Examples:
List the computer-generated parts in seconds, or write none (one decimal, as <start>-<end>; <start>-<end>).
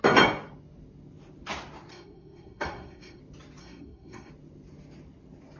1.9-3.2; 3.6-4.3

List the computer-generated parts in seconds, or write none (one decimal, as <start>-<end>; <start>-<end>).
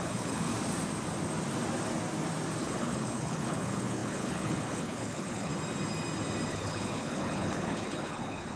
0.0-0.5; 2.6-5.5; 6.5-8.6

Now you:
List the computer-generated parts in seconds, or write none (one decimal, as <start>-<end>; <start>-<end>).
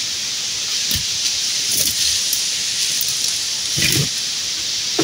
none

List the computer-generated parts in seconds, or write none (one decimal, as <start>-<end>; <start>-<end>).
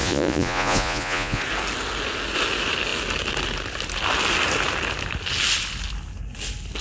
0.0-1.4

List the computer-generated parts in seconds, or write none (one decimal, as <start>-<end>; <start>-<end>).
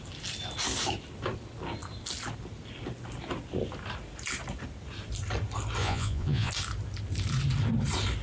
5.8-6.5